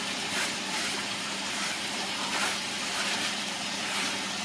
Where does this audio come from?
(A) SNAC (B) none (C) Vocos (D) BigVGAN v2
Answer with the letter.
D